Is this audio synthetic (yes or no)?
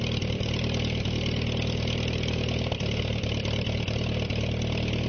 no